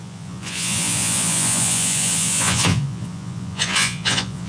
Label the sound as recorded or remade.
remade